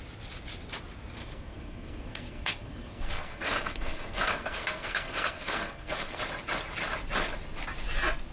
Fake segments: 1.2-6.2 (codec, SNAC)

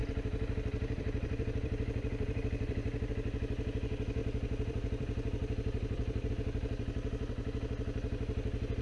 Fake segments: 0.0-3.1 (vocoder, BigVGAN v2); 4.2-6.3

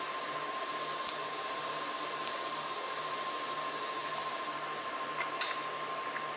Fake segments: none

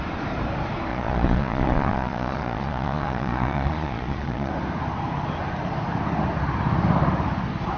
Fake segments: 0.9-4.5 (vocoder, Vocos)

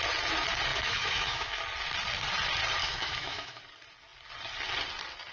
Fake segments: 0.7-1.6 (autoencoder, DAC-VAE); 2.8-3.6

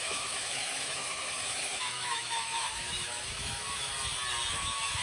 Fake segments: 0.0-3.9 (autoencoder, DAC-VAE); 4.5-5.0

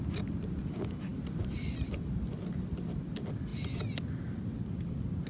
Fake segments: none

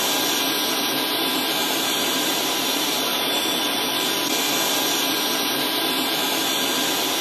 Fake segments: 1.6-3.4 (vocoder, BigVGAN v2)